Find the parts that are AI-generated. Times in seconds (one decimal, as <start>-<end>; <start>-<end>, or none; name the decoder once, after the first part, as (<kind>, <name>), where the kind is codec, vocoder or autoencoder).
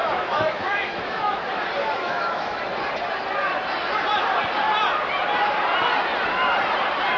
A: 0.0-1.4 (autoencoder, DAC-VAE); 1.8-2.6